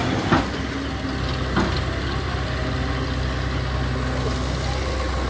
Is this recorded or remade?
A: recorded